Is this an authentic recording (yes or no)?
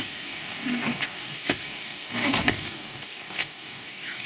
no